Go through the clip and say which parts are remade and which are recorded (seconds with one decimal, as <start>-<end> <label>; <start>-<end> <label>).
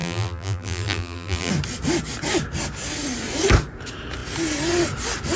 0.0-1.5 remade; 1.5-5.4 recorded